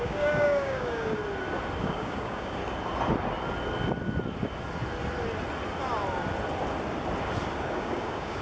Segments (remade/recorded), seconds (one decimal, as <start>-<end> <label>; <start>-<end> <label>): 0.0-1.2 remade; 1.2-1.8 recorded; 1.8-2.6 remade; 2.6-7.6 recorded; 7.6-8.4 remade